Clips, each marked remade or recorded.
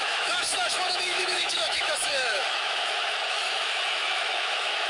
remade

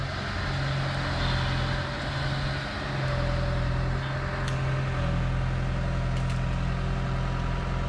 recorded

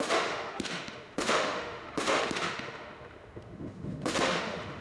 remade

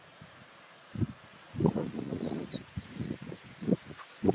remade